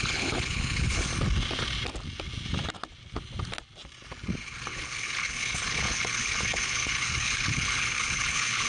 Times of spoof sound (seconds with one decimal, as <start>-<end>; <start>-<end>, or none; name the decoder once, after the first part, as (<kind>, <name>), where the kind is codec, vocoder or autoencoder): 0.0-1.1 (codec, HILCodec); 4.4-8.7